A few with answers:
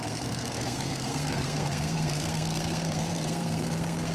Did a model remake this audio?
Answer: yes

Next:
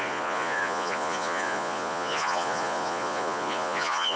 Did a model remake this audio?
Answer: yes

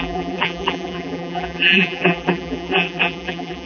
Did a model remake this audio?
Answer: yes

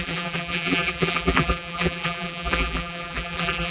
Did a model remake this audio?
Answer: yes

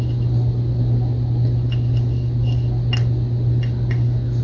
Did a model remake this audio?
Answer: no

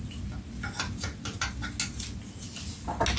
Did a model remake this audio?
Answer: no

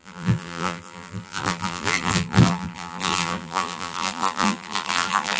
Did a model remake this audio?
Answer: yes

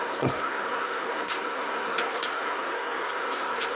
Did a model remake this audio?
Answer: yes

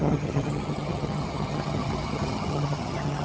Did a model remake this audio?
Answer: yes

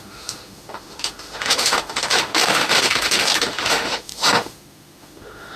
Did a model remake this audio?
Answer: yes